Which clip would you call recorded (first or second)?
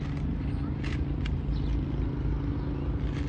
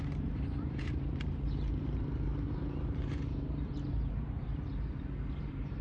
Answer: first